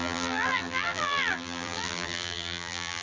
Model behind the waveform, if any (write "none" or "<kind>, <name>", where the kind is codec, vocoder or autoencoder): vocoder, BigVGAN v2